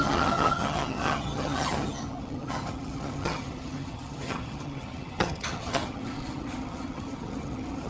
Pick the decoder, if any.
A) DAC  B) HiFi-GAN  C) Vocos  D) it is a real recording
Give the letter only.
B